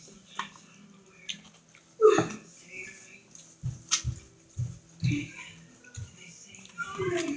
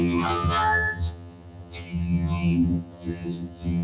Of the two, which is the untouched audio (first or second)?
first